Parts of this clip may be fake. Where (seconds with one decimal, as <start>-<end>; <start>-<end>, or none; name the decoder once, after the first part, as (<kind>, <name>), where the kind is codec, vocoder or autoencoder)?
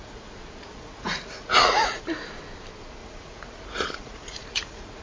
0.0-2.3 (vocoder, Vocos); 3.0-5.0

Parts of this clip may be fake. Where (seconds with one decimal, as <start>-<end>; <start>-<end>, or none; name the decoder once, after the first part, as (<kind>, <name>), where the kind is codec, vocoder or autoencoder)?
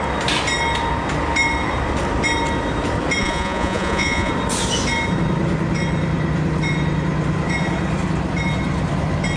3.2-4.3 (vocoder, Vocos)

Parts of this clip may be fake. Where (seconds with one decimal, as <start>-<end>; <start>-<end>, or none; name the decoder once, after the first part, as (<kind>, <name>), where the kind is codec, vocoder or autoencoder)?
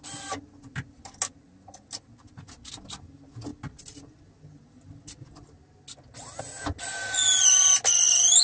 none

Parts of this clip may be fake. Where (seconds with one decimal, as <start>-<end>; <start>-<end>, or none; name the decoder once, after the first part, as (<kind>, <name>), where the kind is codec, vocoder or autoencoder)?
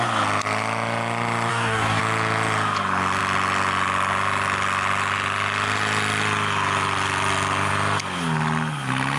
1.5-2.0 (codec, DAC)